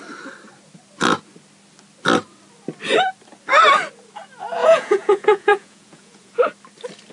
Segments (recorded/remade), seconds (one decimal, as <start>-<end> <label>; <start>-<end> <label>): 0.0-4.6 recorded; 4.6-6.4 remade; 6.4-7.1 recorded